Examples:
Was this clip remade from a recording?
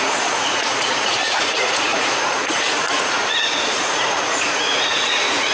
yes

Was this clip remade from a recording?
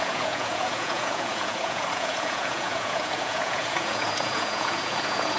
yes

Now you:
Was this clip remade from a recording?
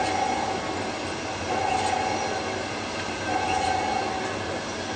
no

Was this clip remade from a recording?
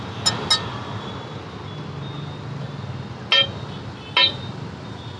no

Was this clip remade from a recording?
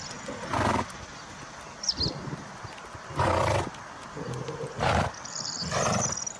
no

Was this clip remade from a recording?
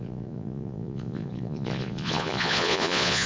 yes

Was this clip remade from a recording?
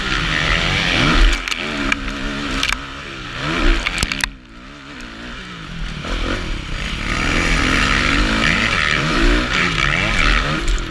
no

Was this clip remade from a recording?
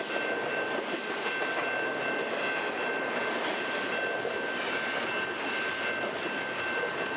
no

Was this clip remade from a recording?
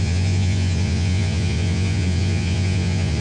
yes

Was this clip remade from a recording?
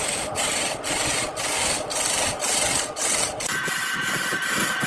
no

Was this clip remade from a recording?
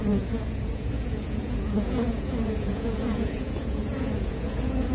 yes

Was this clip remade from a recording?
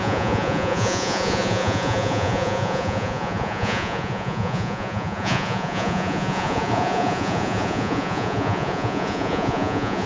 yes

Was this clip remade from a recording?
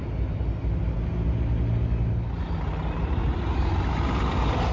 no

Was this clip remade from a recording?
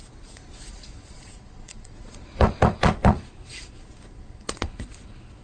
yes